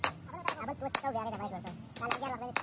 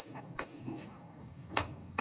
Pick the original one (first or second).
first